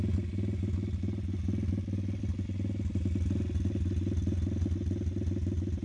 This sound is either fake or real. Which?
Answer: real